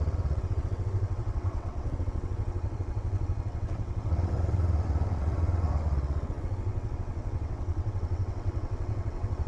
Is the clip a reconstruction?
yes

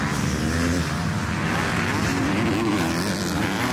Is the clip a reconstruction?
no